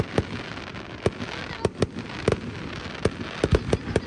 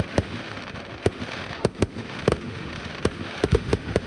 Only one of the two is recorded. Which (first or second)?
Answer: first